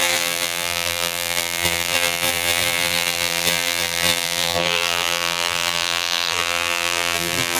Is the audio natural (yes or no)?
no